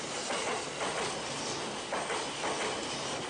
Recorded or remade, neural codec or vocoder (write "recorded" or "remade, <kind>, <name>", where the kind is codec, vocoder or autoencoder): recorded